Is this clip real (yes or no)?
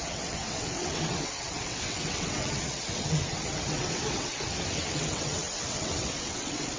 no